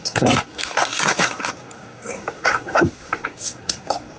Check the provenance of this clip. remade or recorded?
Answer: remade